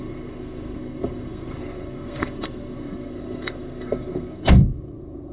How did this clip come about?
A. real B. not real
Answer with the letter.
B